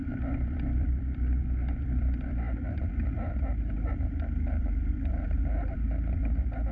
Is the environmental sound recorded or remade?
remade